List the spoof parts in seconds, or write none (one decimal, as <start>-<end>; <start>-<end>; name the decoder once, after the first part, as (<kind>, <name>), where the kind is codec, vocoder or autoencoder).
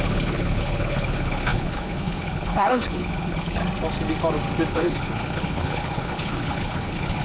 0.0-3.6 (codec, HILCodec); 4.7-7.2